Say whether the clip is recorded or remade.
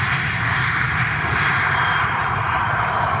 remade